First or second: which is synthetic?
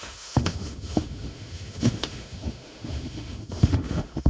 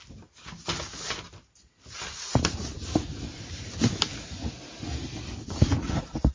first